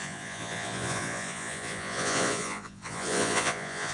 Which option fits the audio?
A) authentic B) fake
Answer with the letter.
B